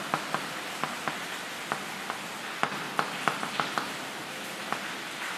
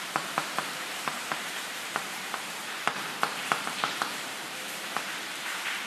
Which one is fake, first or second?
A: second